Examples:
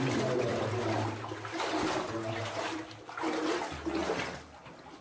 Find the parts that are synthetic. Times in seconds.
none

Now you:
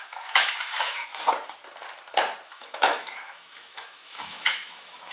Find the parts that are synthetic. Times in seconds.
0.0-1.1 (autoencoder, DAC-VAE); 2.5-5.1

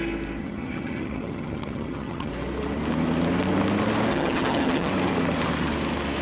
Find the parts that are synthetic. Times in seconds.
0.4-2.3 (vocoder, HiFi-GAN); 4.1-4.9

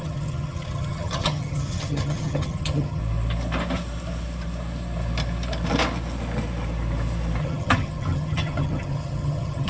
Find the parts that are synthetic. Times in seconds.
0.0-3.0 (vocoder, HiFi-GAN); 7.4-9.7

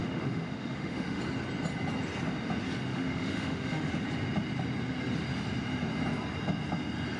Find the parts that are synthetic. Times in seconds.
0.0-1.2 (autoencoder, DAC-VAE); 2.9-3.9